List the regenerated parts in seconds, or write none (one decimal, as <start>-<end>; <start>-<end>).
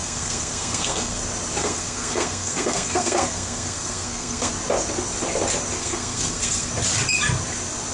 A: 0.0-1.2; 1.6-4.5; 5.8-6.7